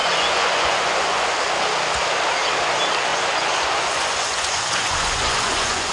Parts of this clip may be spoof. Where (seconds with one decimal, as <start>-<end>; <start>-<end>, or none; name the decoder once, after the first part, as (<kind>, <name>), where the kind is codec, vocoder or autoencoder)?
0.0-1.3 (vocoder, Vocos); 3.1-5.9